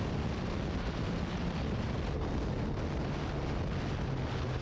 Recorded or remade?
recorded